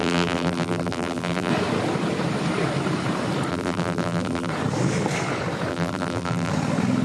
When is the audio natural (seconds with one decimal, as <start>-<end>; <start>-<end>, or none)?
1.5-3.5; 4.5-5.7; 6.5-7.0